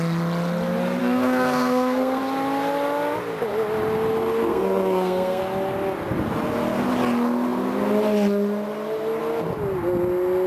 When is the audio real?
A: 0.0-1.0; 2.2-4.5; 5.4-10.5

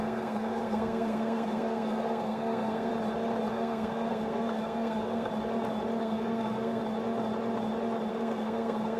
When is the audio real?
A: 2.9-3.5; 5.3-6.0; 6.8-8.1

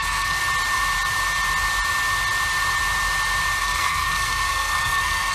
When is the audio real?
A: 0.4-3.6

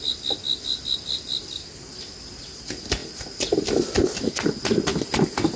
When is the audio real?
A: 0.0-5.6

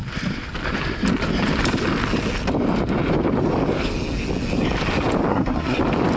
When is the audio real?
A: 0.0-5.3; 5.8-6.2

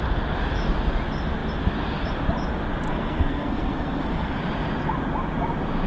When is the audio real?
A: 0.0-2.9; 4.4-5.9